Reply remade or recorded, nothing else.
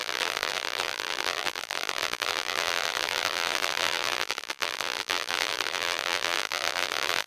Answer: remade